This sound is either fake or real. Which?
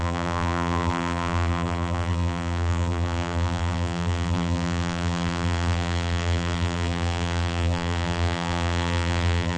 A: fake